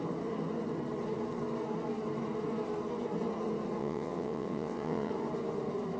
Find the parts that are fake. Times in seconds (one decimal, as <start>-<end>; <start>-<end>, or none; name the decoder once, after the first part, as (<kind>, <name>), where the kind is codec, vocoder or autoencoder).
3.8-5.1 (vocoder, WaveNeXt)